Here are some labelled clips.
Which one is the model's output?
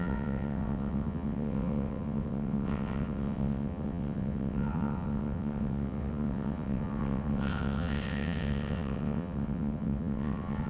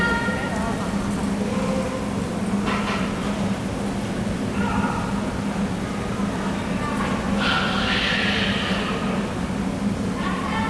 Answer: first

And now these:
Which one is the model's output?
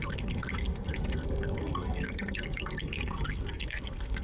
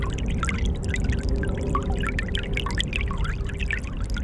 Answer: first